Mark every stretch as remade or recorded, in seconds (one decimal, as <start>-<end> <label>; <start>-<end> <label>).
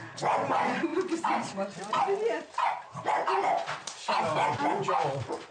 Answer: 0.0-0.9 recorded; 0.9-4.2 remade; 4.2-5.5 recorded